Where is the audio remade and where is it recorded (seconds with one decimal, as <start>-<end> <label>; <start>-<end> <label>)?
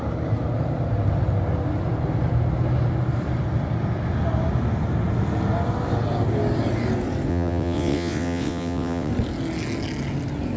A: 0.0-7.3 recorded; 7.3-9.1 remade; 9.1-10.6 recorded